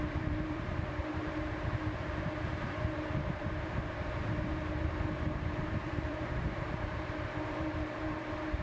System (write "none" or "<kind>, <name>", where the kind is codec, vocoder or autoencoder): vocoder, BigVGAN v2